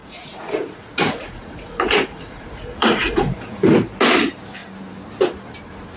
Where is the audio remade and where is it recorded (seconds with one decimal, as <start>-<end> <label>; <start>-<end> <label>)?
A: 0.0-3.6 remade; 3.6-6.0 recorded